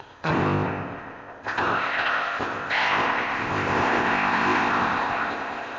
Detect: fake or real fake